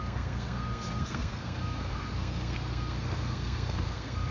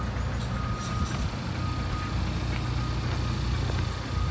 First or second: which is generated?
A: first